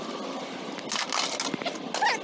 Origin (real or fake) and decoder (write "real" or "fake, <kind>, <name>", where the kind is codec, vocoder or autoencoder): real